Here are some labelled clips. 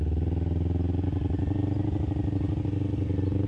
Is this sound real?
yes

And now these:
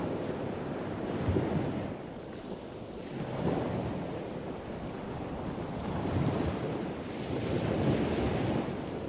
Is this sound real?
yes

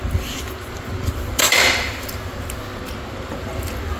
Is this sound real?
yes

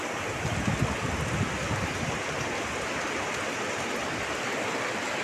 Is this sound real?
yes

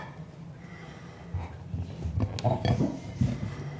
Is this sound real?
yes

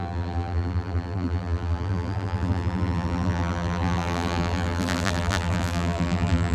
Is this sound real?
no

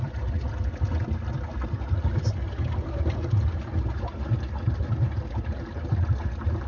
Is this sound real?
yes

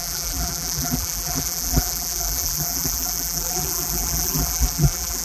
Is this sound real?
no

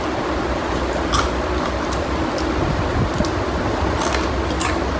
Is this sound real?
yes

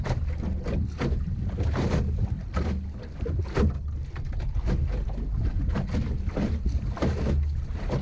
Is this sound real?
yes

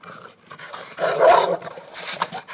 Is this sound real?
no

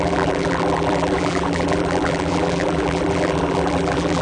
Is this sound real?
no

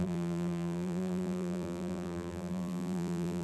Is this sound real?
no